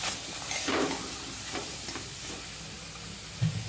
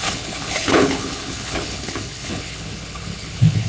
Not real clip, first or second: second